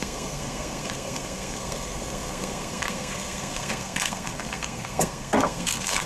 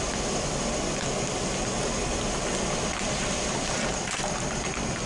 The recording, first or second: second